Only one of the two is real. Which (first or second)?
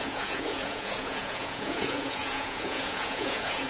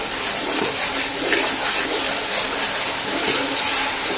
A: second